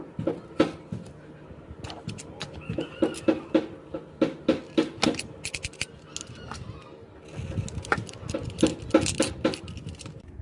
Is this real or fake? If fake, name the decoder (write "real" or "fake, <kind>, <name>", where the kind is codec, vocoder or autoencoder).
real